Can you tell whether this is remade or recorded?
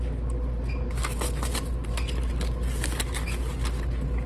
recorded